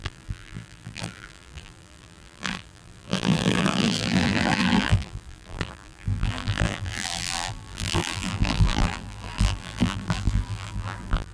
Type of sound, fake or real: fake